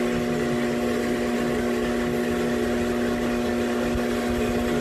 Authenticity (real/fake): real